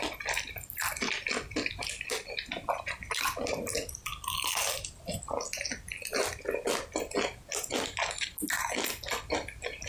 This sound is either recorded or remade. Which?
recorded